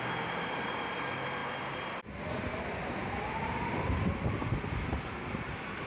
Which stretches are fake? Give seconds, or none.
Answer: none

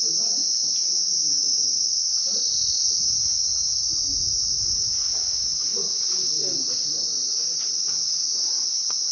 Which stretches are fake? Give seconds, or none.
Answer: none

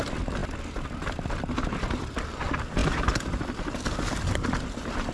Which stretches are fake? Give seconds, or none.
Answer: none

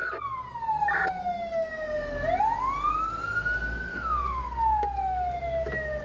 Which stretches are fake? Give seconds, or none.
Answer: 3.9-6.0 (autoencoder, DAC-VAE)

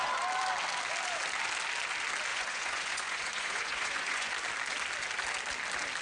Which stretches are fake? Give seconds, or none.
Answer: 2.3-4.3 (vocoder, Vocos)

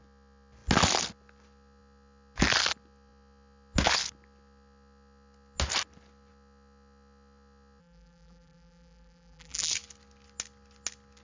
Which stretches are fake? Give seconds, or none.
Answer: 7.8-9.7 (vocoder, BigVGAN v2)